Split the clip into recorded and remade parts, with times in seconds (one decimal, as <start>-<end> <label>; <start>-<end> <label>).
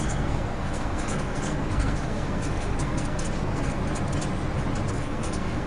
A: 0.0-3.8 remade; 3.8-4.9 recorded; 4.9-5.7 remade